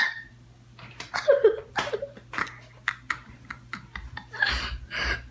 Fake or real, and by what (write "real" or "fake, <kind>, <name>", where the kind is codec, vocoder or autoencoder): real